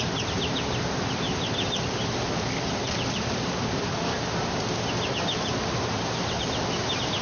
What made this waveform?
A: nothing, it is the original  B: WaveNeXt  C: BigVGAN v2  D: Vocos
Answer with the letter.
C